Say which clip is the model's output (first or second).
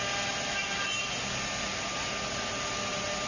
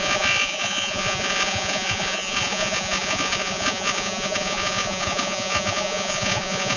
second